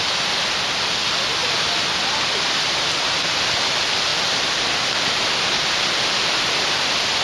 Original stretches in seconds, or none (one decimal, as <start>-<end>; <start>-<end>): 0.0-7.2